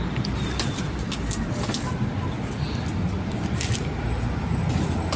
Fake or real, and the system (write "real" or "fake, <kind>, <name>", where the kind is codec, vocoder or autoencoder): real